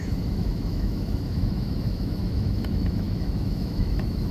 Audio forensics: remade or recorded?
remade